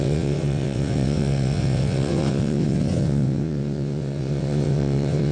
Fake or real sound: fake